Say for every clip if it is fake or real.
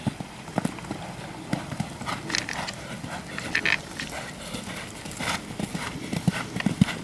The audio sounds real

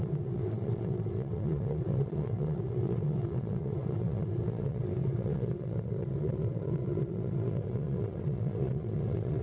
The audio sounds fake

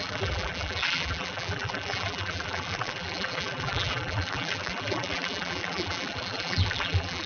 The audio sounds fake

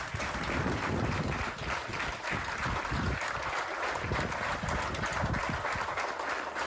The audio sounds real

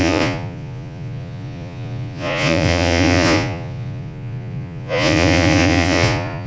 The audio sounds fake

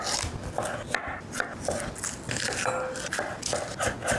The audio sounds real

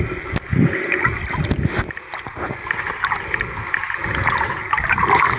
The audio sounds real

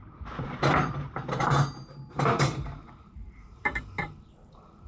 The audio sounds fake